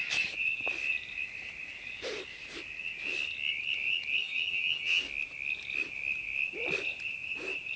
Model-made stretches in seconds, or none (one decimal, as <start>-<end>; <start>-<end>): 4.2-5.0